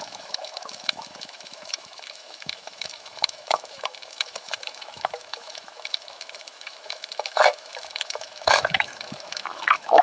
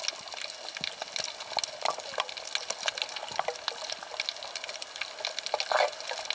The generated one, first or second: first